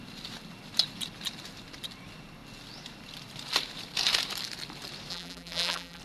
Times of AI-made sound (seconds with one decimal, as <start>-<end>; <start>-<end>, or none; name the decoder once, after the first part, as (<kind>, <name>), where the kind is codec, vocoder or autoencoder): 5.1-6.0 (vocoder, BigVGAN v2)